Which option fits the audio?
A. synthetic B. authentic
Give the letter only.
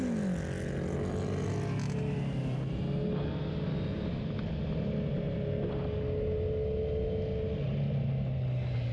B